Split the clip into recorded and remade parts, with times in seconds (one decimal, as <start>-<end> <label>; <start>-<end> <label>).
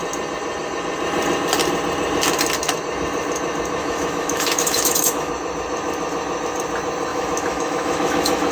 0.0-3.8 recorded; 3.8-5.3 remade; 5.3-7.1 recorded; 7.1-8.5 remade